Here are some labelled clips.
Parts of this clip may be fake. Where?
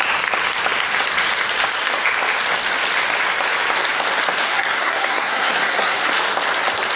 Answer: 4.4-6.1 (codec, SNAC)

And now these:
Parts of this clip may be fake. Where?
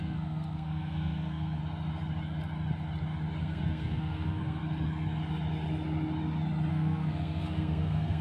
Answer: 0.0-1.6 (codec, SNAC); 3.4-4.6; 6.7-8.2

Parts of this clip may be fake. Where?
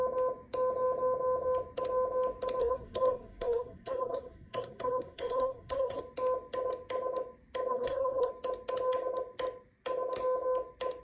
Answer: 2.6-6.0 (codec, SNAC); 7.7-8.3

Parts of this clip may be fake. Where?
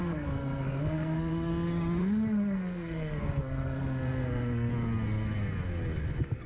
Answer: 0.0-1.5 (codec, SNAC); 2.0-4.7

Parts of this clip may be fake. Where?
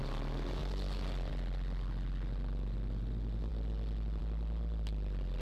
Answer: none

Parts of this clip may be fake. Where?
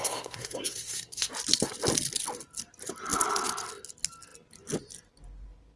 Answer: 0.0-1.3 (codec, SNAC)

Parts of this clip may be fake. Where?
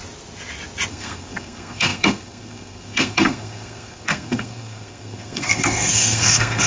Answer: 0.9-6.7 (codec, SNAC)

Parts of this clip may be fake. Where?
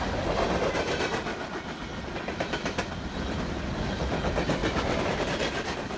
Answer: none